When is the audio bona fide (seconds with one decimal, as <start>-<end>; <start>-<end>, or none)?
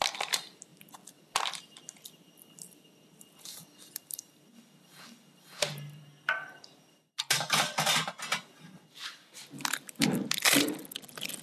0.0-11.4